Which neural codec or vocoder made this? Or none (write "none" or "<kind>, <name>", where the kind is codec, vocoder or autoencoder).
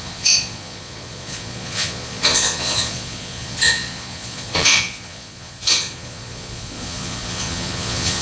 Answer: vocoder, Vocos